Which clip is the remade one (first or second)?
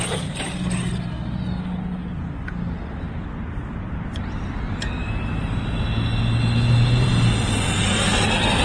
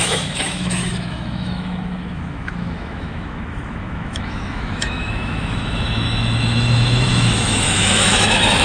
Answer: second